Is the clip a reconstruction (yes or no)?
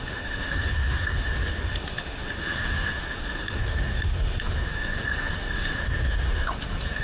yes